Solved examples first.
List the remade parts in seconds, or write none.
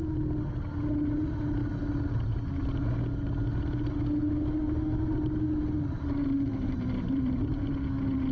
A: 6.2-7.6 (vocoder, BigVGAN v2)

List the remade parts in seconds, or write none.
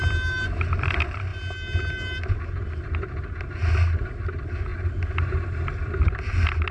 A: none